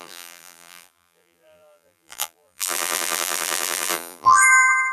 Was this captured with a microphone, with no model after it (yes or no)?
no